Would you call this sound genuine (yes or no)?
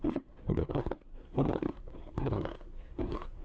no